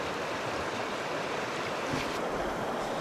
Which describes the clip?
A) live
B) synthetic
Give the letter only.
A